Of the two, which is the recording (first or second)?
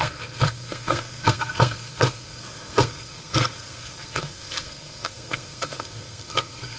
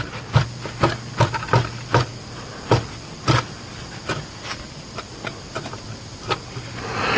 second